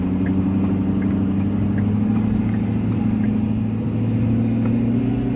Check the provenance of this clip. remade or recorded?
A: recorded